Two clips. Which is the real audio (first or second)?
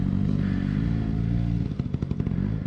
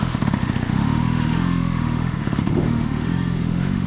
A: first